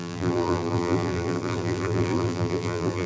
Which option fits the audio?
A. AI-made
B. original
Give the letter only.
A